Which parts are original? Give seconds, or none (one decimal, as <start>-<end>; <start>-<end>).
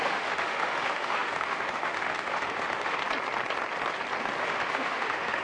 3.0-4.4